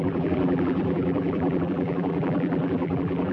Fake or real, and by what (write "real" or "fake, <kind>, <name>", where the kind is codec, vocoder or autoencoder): fake, vocoder, BigVGAN v2